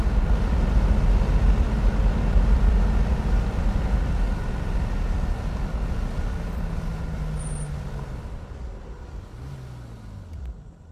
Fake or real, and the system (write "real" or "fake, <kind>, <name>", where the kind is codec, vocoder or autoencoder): real